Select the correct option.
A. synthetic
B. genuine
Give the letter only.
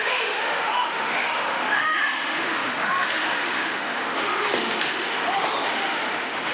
A